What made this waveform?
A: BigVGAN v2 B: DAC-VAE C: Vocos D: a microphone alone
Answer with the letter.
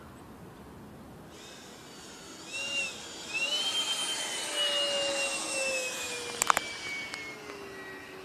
D